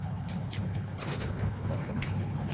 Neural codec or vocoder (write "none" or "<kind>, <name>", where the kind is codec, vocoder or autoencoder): codec, HILCodec